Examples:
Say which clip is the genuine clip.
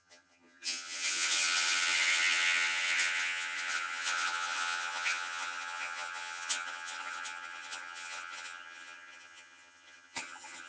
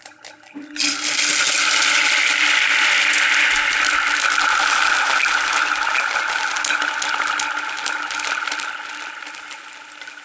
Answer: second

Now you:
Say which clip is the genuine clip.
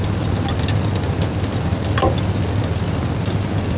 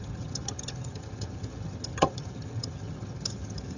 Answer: first